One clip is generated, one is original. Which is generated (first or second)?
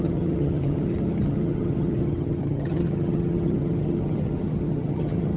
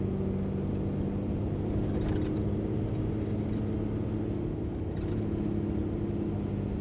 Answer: first